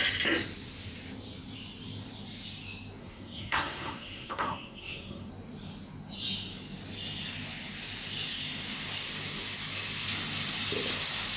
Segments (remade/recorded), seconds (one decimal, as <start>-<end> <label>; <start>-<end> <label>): 0.0-3.0 recorded; 3.0-5.3 remade; 5.3-11.4 recorded